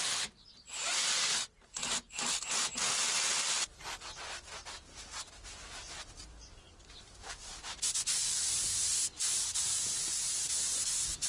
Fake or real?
fake